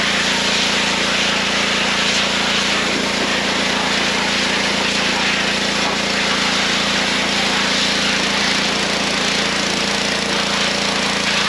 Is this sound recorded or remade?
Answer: recorded